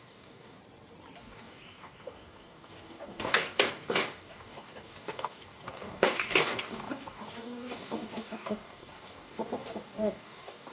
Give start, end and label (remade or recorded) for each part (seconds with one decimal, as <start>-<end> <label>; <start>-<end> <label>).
0.0-0.6 remade; 0.6-1.2 recorded; 1.2-10.7 remade